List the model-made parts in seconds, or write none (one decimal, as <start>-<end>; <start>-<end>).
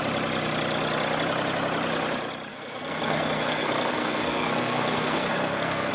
2.5-5.9